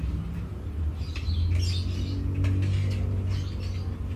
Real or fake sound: real